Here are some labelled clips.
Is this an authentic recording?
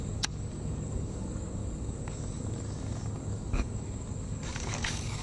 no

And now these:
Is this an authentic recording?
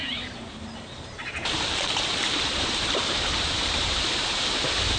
no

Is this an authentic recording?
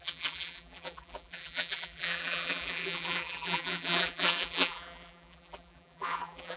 no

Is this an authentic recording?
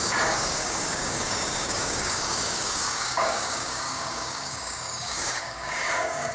no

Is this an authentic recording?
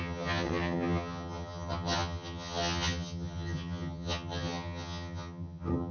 no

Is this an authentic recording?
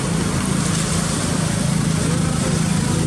yes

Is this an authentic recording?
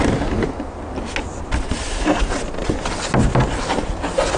yes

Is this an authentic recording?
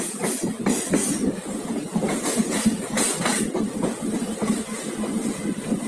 yes